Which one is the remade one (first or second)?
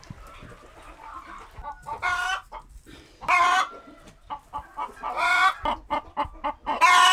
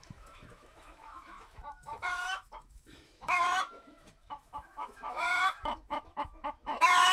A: second